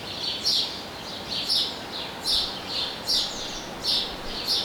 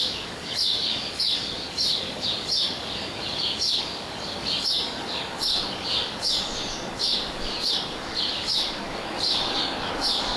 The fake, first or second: second